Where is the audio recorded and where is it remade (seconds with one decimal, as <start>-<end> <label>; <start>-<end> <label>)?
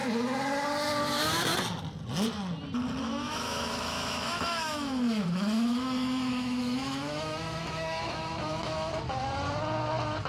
0.0-3.0 recorded; 3.0-8.9 remade; 8.9-10.3 recorded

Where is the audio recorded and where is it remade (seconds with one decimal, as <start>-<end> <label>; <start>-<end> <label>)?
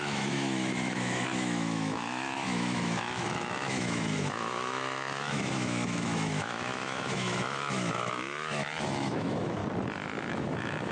0.0-9.6 remade; 9.6-10.3 recorded; 10.3-10.9 remade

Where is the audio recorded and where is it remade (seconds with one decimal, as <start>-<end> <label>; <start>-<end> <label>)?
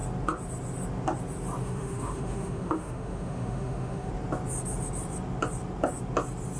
0.0-1.6 recorded; 1.6-4.1 remade; 4.1-6.6 recorded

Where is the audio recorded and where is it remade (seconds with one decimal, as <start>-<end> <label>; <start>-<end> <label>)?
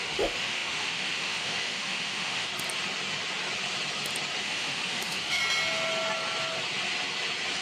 0.0-2.5 remade; 2.5-4.4 recorded; 4.4-5.4 remade; 5.4-7.6 recorded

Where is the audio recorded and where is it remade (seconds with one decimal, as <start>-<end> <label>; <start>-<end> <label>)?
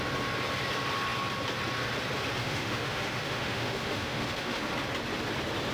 0.0-2.4 recorded; 2.4-4.7 remade; 4.7-5.7 recorded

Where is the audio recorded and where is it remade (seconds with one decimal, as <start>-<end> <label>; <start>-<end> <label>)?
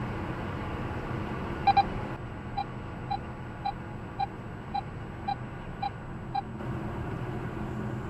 0.0-8.1 recorded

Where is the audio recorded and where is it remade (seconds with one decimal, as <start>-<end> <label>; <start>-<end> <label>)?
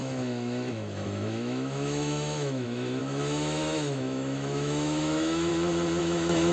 0.0-5.5 remade; 5.5-6.0 recorded; 6.0-6.5 remade